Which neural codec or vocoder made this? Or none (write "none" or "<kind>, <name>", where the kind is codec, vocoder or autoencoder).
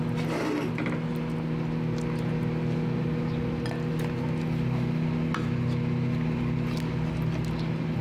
none